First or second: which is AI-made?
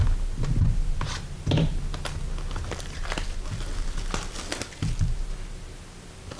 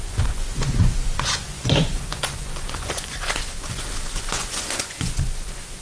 second